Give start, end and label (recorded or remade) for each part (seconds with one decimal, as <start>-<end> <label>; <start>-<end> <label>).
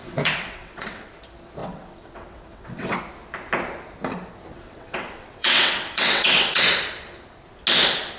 0.0-1.1 remade; 1.1-1.6 recorded; 1.6-3.0 remade; 3.0-4.5 recorded; 4.5-6.6 remade; 6.6-8.2 recorded